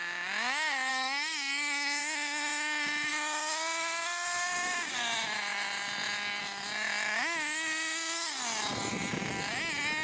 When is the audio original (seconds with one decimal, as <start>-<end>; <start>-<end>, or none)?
0.0-0.9; 2.0-10.0